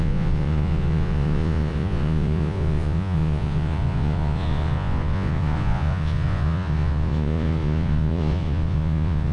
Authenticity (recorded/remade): remade